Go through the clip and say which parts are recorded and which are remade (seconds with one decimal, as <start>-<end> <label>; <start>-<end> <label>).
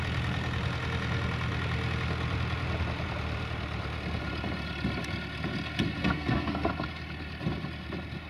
0.0-6.0 recorded; 6.0-6.7 remade; 6.7-8.3 recorded